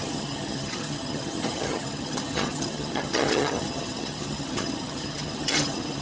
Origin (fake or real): fake